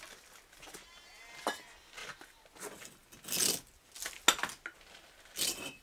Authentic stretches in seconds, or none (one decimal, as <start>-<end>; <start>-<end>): 0.0-5.8